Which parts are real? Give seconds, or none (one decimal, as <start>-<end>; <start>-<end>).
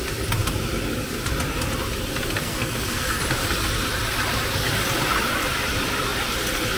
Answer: 0.0-2.4; 3.2-6.8